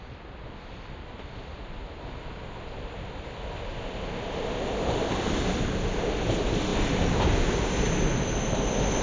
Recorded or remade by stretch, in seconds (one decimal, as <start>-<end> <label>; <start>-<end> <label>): 0.0-9.0 recorded